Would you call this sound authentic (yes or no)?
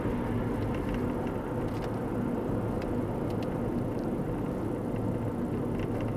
yes